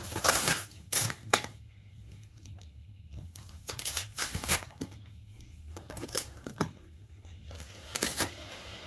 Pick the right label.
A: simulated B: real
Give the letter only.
A